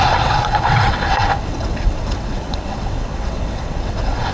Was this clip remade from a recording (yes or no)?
yes